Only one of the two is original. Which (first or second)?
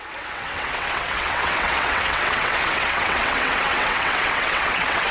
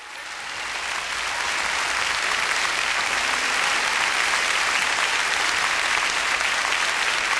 second